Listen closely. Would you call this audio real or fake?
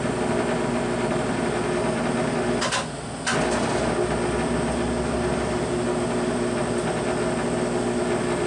real